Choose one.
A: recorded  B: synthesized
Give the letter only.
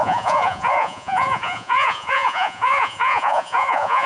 B